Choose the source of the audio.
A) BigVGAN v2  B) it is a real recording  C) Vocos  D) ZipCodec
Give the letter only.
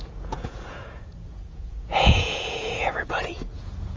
C